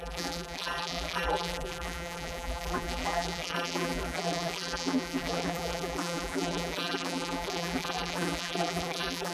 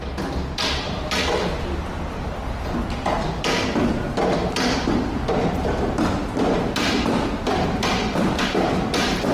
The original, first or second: second